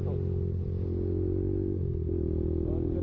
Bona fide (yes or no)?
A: yes